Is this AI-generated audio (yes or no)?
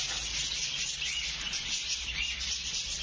no